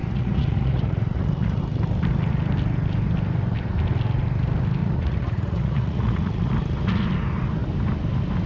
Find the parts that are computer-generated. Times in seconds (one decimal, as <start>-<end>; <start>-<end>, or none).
0.0-1.6; 4.8-6.5